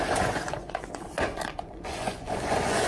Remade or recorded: remade